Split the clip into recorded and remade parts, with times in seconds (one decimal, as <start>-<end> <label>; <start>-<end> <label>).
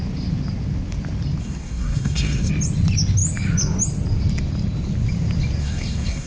0.0-1.4 recorded; 1.4-2.5 remade; 2.5-5.6 recorded; 5.6-6.3 remade